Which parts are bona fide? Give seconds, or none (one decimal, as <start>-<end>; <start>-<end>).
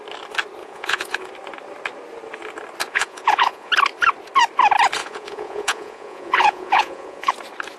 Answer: 0.0-0.6; 1.3-2.8; 3.7-5.0; 7.3-7.8